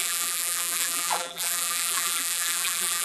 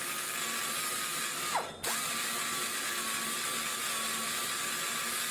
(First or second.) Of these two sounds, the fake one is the first